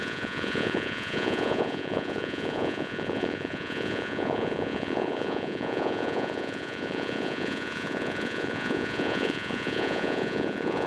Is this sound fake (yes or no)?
yes